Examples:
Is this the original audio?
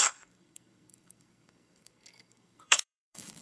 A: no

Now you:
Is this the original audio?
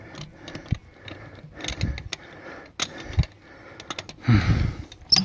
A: yes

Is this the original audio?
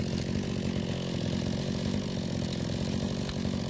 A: yes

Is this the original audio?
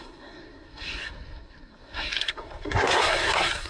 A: no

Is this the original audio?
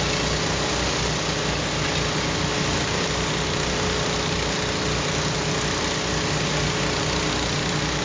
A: yes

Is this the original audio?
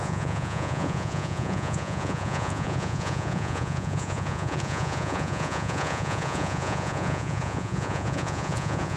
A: no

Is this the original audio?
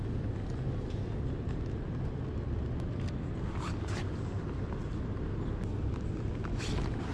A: yes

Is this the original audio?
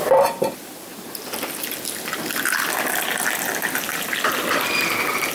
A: yes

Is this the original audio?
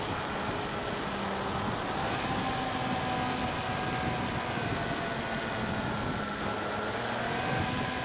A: yes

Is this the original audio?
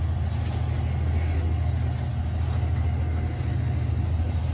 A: yes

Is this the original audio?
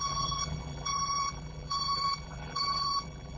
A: no